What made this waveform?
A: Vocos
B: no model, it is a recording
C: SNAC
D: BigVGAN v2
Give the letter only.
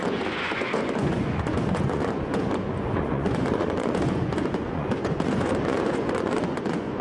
A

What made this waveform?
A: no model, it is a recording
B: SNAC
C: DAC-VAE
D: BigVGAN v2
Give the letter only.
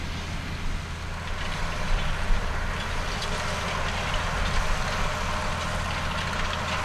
A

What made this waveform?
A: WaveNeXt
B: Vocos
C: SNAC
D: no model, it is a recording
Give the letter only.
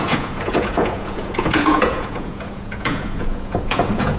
B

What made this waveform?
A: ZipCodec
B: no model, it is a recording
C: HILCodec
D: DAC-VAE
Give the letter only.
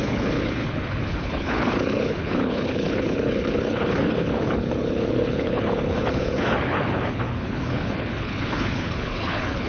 C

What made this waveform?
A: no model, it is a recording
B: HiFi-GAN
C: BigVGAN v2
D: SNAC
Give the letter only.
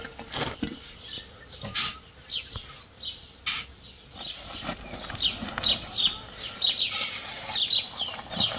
A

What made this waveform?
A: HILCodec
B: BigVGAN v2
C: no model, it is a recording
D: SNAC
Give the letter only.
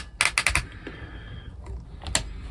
C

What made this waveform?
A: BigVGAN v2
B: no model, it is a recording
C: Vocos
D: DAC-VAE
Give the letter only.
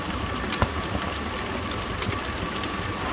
B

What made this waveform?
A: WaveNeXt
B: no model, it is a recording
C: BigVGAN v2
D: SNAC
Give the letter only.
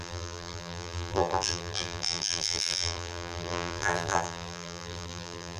C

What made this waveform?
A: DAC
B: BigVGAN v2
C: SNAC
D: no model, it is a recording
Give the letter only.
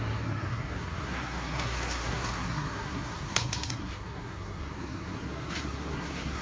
C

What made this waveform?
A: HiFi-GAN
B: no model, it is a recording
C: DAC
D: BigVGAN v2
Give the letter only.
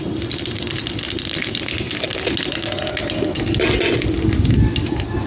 B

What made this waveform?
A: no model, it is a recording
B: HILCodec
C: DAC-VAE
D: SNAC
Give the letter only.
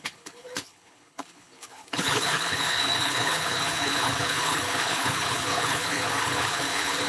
B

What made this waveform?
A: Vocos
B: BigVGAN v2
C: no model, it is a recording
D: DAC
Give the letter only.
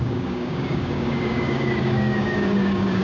D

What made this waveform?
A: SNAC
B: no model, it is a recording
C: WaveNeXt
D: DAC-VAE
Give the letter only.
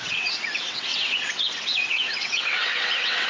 C